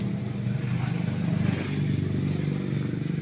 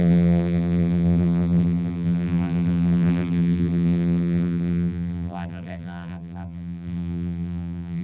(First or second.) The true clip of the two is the first